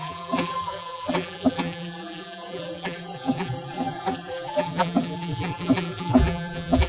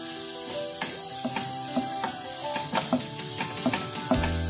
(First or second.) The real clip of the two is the second